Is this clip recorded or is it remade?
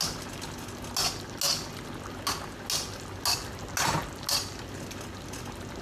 recorded